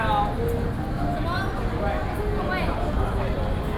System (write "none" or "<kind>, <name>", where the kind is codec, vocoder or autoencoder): none